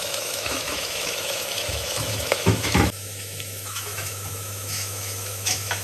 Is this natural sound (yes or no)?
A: no